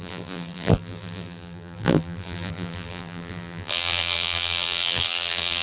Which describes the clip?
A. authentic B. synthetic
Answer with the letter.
B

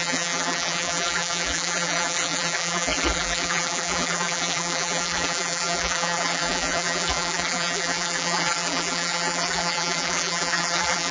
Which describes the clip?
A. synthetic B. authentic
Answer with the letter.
A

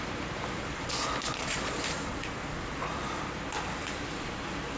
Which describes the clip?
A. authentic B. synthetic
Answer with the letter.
B